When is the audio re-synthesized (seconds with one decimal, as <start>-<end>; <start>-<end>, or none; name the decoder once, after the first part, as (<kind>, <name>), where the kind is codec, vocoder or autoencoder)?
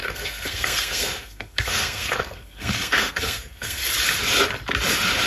0.0-3.8 (codec, SNAC)